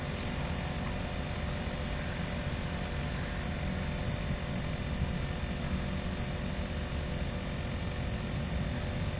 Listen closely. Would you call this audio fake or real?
real